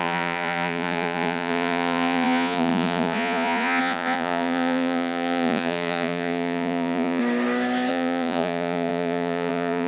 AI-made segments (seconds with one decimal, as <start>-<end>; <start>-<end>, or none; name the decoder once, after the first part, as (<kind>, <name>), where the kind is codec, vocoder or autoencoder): 0.0-7.2 (vocoder, Vocos); 7.9-9.9